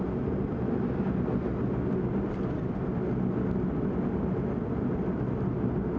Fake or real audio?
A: real